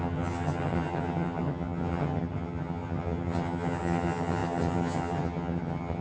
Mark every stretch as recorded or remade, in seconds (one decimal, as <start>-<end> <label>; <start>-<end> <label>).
0.0-6.0 remade